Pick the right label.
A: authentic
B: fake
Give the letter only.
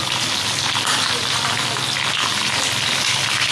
A